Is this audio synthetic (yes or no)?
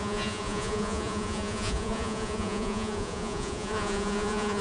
yes